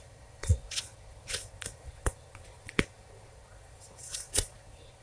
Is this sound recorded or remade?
remade